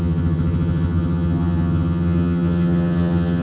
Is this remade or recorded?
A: remade